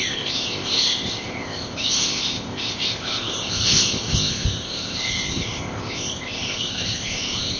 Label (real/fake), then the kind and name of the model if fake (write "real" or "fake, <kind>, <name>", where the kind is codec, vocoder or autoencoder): fake, codec, ZipCodec